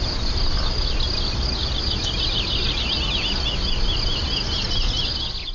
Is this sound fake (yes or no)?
no